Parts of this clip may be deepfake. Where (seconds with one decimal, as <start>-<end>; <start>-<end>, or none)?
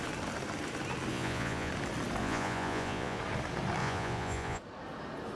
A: 1.1-1.7; 2.2-3.2; 3.8-4.6